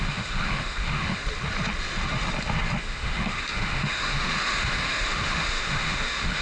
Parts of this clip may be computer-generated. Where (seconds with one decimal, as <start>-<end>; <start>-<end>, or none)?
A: 0.0-1.2; 2.8-6.4